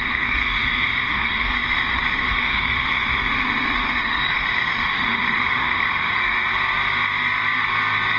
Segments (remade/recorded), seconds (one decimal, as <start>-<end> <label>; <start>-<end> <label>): 0.0-6.2 remade; 6.2-8.2 recorded